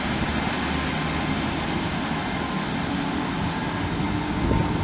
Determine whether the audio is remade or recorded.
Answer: recorded